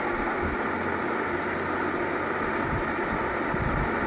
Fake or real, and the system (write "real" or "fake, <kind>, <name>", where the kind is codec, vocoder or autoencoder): real